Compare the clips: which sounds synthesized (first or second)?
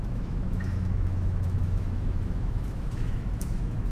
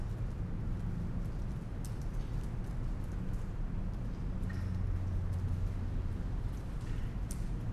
first